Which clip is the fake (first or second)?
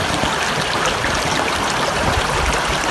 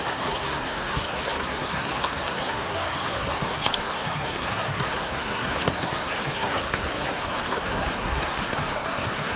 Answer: second